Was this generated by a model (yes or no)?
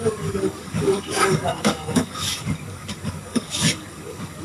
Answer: yes